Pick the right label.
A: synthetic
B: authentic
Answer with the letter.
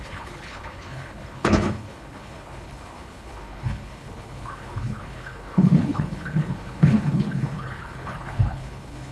A